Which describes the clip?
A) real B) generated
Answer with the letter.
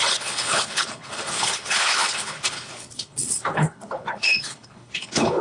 B